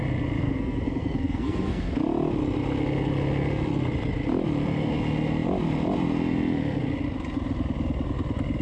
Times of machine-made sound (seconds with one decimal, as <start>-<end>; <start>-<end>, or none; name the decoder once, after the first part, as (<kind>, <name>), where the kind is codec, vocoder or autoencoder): 0.4-1.9 (codec, SNAC)